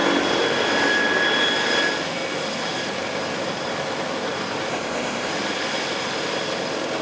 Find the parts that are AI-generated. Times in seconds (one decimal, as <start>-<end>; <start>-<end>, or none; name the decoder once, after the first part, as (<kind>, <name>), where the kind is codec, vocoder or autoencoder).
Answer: 4.7-5.3 (codec, ZipCodec)